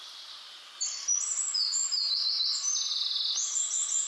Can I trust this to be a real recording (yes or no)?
yes